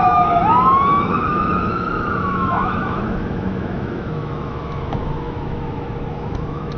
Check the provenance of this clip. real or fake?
fake